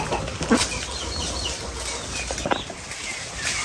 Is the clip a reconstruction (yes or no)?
no